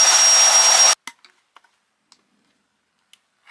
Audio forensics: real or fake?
real